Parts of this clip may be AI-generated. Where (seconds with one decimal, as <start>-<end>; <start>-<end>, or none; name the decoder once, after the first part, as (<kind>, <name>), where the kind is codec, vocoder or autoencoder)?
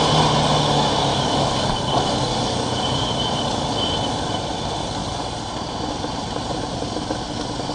none